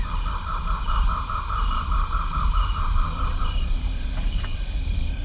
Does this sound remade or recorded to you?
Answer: remade